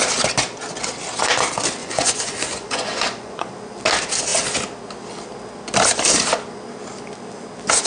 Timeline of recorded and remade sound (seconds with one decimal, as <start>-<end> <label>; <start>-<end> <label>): 0.0-1.8 recorded; 1.8-3.5 remade; 3.5-7.9 recorded